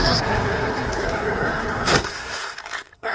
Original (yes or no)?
no